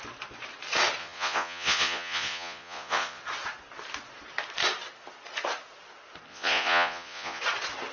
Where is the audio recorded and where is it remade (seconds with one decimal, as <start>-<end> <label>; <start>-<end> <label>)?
0.0-1.0 recorded; 1.0-3.2 remade; 3.2-6.3 recorded; 6.3-7.4 remade; 7.4-7.9 recorded